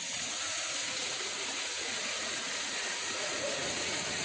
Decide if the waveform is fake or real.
fake